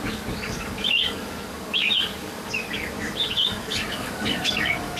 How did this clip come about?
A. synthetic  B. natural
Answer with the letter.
A